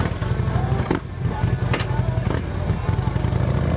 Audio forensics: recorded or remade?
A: recorded